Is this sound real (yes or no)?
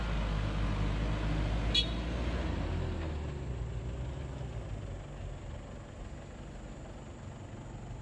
yes